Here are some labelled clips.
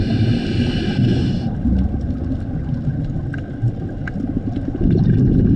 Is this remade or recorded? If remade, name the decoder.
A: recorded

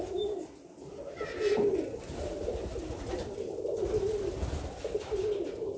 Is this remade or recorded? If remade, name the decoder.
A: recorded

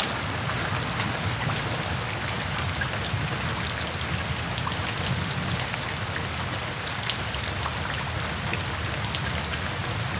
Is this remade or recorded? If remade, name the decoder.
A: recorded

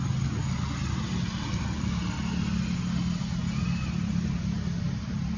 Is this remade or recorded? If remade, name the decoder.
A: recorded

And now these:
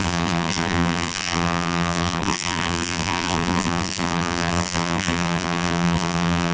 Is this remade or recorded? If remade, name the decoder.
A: remade, vocoder, BigVGAN v2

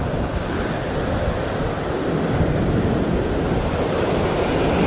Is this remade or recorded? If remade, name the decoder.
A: recorded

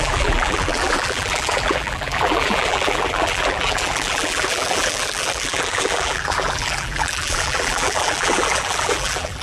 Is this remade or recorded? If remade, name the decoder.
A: remade, vocoder, BigVGAN v2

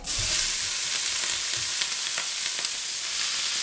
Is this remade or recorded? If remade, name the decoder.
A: recorded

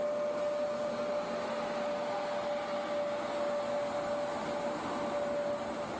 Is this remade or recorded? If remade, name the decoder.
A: recorded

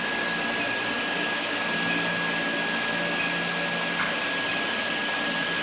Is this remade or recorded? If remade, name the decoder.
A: recorded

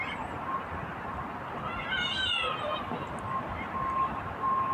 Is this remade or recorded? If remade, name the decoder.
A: recorded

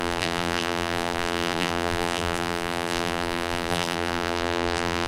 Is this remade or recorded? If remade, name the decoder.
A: remade, vocoder, BigVGAN v2